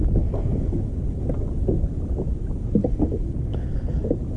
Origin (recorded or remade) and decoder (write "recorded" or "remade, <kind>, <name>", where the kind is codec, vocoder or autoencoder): recorded